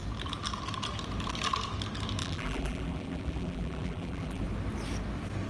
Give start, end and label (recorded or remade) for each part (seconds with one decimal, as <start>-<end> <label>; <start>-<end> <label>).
0.0-2.2 recorded; 2.2-4.4 remade; 4.4-5.5 recorded